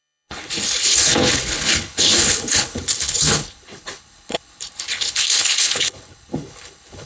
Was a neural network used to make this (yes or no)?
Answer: yes